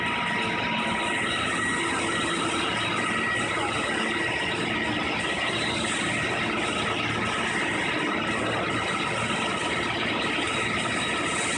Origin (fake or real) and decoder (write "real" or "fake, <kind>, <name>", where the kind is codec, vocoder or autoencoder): real